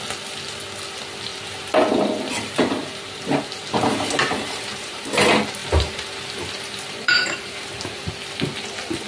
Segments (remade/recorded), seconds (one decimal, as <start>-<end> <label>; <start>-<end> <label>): 0.0-1.3 recorded; 1.3-5.0 remade; 5.0-5.6 recorded; 5.6-8.1 remade; 8.1-9.1 recorded